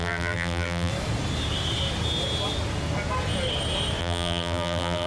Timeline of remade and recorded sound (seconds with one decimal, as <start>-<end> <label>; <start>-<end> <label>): 0.0-0.9 remade; 0.9-4.0 recorded; 4.0-5.1 remade